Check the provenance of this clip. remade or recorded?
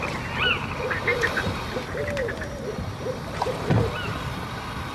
recorded